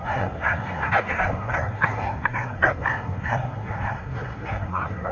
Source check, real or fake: fake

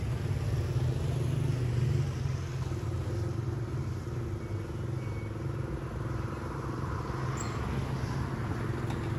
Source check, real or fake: real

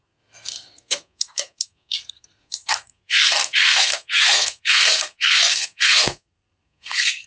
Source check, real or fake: fake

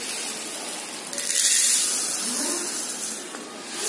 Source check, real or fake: real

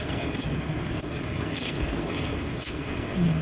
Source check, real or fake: fake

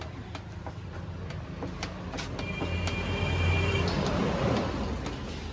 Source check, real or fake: real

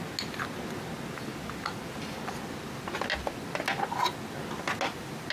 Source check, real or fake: real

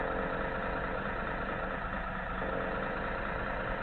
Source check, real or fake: real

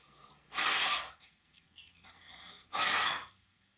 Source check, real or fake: fake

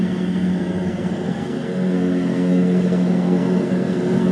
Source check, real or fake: fake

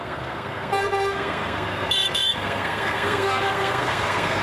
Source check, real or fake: fake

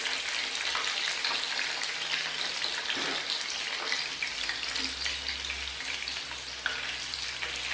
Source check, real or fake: real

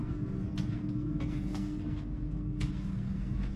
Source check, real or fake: fake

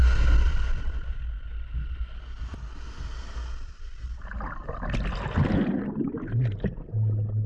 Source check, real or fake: real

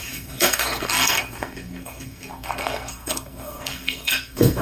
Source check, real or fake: fake